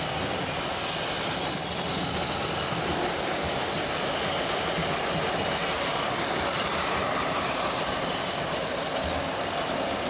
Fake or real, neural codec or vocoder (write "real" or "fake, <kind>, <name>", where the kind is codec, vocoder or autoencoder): real